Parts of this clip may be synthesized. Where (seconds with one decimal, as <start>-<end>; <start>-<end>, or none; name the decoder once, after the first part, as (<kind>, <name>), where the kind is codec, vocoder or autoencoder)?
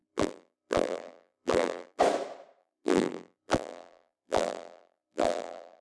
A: 0.0-2.0 (vocoder, BigVGAN v2); 2.6-5.8